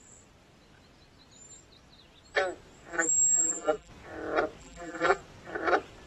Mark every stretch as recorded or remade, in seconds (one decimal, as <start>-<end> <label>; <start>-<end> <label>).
0.0-2.9 recorded; 2.9-3.9 remade; 3.9-4.6 recorded; 4.6-5.2 remade; 5.2-6.1 recorded